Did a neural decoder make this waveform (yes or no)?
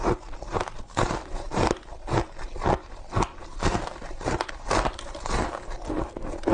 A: no